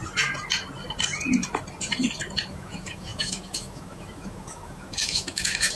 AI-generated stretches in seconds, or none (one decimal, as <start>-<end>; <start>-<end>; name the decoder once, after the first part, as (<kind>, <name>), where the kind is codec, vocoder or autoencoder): 2.5-5.7 (autoencoder, DAC-VAE)